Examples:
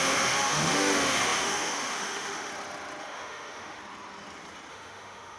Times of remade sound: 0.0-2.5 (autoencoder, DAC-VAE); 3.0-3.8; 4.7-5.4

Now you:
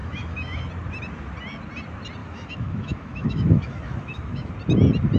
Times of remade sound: 0.0-0.6 (autoencoder, DAC-VAE); 2.2-4.5

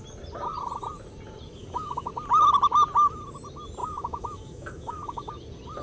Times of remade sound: 1.6-2.1 (autoencoder, DAC-VAE); 3.8-5.3

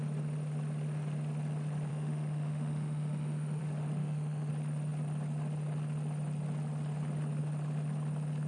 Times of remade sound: 1.9-3.6 (autoencoder, DAC-VAE); 4.0-4.5